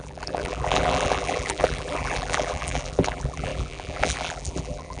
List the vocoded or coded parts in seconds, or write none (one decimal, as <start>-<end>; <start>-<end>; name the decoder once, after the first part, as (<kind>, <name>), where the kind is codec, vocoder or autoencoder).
0.0-5.0 (vocoder, BigVGAN v2)